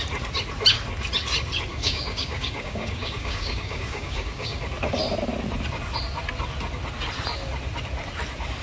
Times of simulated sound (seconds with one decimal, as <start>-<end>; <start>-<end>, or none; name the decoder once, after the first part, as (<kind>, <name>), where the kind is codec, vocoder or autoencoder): 1.7-4.6 (codec, DAC)